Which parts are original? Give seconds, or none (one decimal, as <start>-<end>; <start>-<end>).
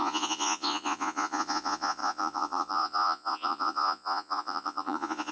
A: none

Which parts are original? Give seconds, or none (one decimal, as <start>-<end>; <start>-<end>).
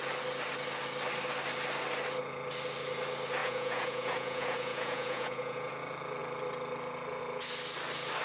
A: 0.0-3.4; 5.7-8.2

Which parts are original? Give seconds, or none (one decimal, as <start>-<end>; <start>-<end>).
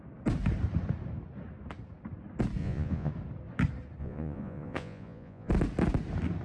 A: 0.0-2.6; 3.1-4.0; 5.5-6.4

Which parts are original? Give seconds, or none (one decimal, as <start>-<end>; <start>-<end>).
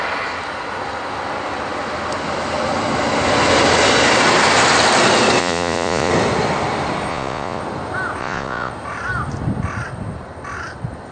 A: 0.0-5.4; 6.1-7.1; 7.6-8.2; 8.7-11.1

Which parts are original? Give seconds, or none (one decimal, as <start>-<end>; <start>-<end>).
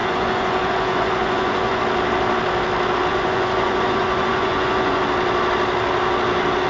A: 1.8-3.1; 5.0-6.7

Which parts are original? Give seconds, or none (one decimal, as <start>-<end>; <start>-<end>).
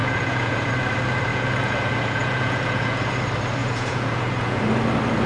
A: 0.7-1.3; 3.1-3.6; 4.6-5.3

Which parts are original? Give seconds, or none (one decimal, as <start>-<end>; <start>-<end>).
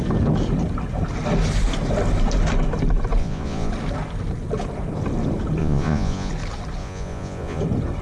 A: 0.0-3.2; 3.7-5.6; 6.3-6.8; 7.6-8.0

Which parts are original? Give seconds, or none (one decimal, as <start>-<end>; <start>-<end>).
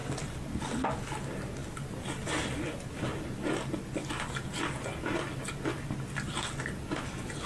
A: 0.0-7.5